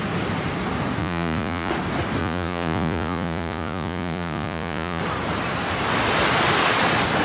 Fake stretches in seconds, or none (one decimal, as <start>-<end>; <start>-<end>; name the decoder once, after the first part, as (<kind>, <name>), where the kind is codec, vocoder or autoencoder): 1.0-1.7 (vocoder, Vocos); 2.2-5.0